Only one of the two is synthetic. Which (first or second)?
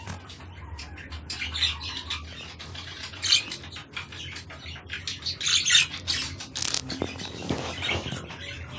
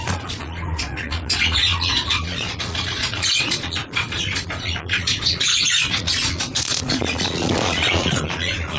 second